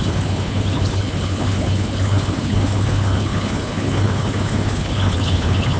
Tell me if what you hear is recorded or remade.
remade